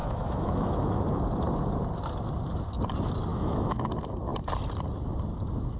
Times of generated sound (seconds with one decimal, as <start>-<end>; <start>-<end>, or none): 0.0-1.0; 3.3-3.9